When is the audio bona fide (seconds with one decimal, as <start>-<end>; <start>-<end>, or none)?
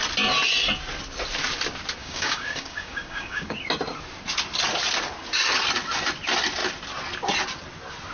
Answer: 0.0-2.0; 3.6-8.1